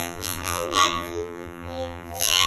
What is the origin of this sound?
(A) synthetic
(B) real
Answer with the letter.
A